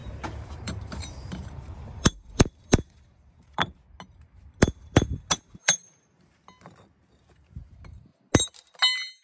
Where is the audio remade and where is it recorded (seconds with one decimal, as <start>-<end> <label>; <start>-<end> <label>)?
0.0-3.8 remade; 3.8-5.6 recorded; 5.6-6.2 remade; 6.2-9.2 recorded